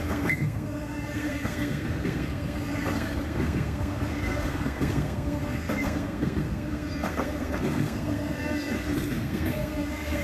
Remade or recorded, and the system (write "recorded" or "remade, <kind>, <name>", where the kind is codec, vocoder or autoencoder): remade, codec, SNAC